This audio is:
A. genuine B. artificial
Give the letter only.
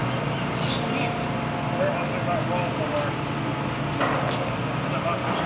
A